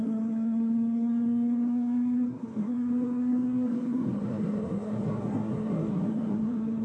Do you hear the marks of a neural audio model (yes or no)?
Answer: yes